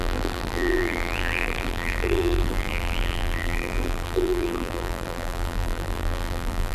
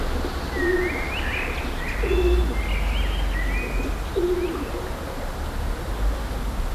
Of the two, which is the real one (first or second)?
second